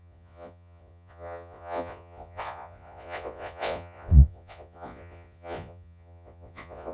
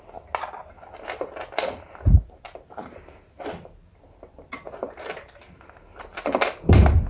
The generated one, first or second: first